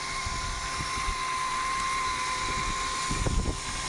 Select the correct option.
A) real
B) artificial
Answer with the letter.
A